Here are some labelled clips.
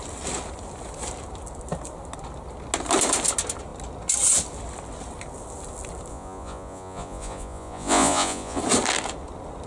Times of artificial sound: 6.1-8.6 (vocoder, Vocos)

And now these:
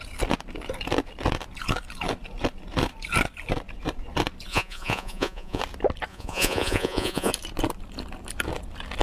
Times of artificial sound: 4.5-5.6 (vocoder, Vocos); 6.1-7.3